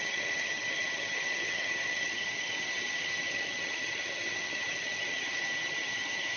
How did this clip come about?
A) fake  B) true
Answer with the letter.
A